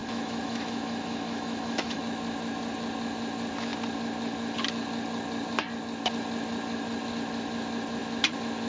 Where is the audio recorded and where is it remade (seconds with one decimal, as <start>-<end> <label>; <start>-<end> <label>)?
0.0-2.0 remade; 2.0-8.7 recorded